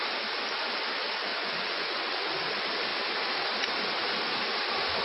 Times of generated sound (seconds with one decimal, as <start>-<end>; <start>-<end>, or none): 1.3-2.3